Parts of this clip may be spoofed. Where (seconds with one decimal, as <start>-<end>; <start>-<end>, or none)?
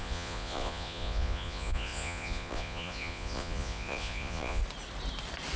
0.0-4.6